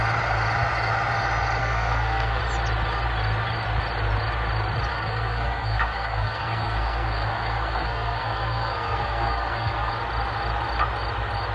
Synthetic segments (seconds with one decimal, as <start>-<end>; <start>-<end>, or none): 1.6-2.4; 4.9-9.9